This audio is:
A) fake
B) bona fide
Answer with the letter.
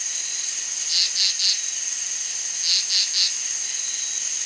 B